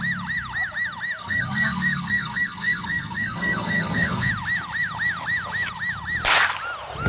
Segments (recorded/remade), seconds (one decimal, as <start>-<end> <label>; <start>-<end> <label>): 0.0-1.2 recorded; 1.2-4.3 remade; 4.3-7.1 recorded